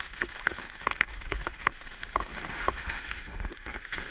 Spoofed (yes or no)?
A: yes